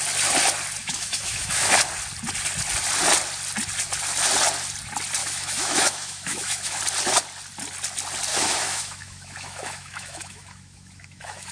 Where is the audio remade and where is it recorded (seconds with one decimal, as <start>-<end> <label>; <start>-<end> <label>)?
0.0-0.8 recorded; 0.8-1.7 remade; 1.7-5.2 recorded; 5.2-6.8 remade; 6.8-8.3 recorded; 8.3-11.5 remade